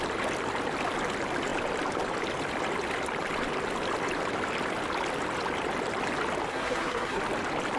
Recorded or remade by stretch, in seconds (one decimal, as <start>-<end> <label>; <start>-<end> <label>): 0.0-6.5 recorded; 6.5-7.2 remade; 7.2-7.8 recorded